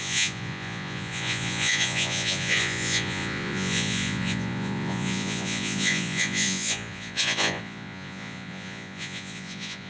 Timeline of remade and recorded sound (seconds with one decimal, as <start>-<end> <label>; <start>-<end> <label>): 0.0-9.9 remade